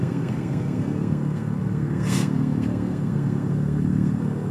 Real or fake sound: fake